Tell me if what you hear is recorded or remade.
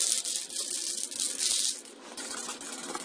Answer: recorded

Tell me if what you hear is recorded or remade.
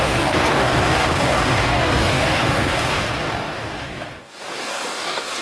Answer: remade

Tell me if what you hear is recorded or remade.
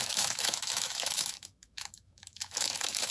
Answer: remade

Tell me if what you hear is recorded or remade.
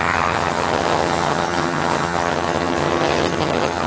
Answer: remade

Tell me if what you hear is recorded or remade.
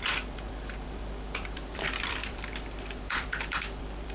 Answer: remade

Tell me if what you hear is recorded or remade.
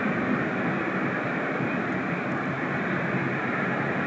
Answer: recorded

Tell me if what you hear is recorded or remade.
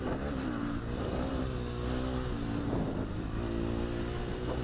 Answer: recorded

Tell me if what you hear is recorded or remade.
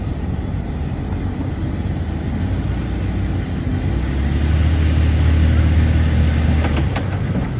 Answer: recorded